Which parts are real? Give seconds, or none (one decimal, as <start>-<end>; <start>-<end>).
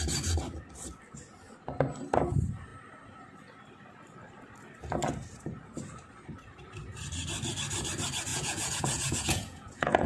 0.0-8.3